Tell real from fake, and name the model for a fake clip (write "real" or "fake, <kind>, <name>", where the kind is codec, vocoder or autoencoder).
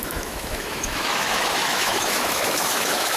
fake, autoencoder, DAC-VAE